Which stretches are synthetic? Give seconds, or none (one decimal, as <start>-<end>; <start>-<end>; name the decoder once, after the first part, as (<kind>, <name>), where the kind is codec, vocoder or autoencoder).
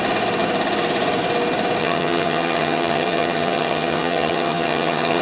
1.8-5.2 (vocoder, HiFi-GAN)